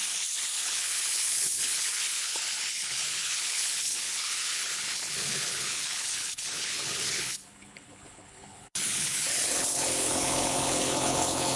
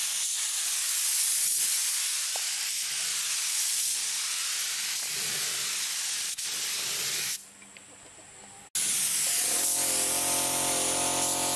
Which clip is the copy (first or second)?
first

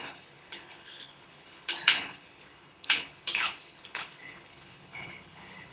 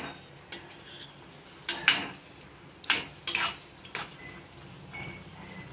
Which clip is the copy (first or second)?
first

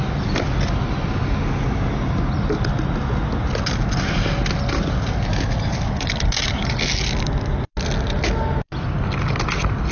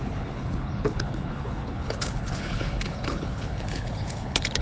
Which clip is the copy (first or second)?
second